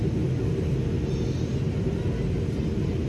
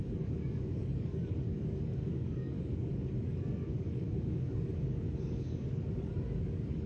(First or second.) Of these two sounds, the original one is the first